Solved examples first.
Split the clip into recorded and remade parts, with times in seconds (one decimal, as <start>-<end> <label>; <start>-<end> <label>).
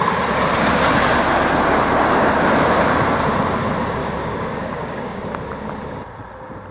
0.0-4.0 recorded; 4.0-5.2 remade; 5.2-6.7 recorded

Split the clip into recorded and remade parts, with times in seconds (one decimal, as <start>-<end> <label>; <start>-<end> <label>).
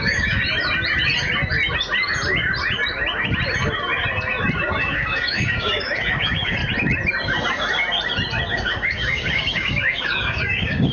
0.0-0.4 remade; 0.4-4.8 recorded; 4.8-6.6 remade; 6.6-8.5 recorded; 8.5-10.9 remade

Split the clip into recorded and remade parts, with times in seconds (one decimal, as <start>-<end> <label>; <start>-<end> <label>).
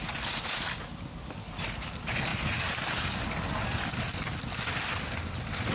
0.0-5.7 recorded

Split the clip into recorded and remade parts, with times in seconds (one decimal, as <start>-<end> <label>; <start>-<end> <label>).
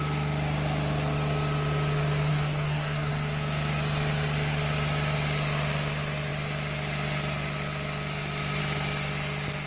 0.0-2.3 recorded; 2.3-3.1 remade; 3.1-9.7 recorded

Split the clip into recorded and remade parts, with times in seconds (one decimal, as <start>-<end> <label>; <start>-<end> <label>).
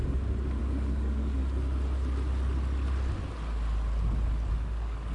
0.0-0.6 recorded; 0.6-1.4 remade; 1.4-4.5 recorded; 4.5-5.1 remade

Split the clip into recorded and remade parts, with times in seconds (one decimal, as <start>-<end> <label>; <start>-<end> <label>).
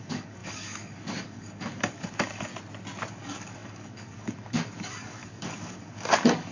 0.0-2.5 remade; 2.5-3.1 recorded; 3.1-6.5 remade